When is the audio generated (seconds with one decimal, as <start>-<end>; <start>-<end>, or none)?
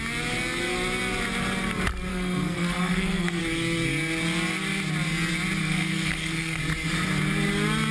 2.1-3.4; 5.6-6.6